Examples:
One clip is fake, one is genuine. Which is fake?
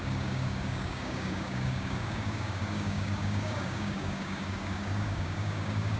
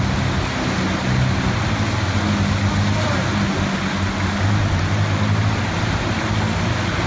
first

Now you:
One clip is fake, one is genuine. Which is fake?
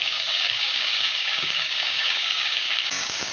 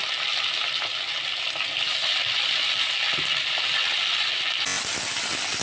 first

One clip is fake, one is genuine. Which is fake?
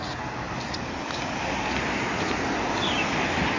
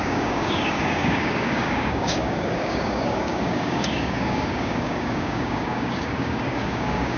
second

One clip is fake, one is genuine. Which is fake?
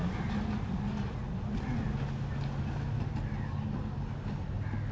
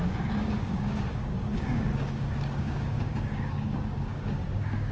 second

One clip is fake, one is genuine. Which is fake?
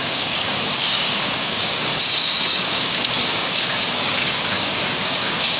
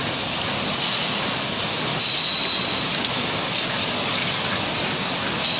first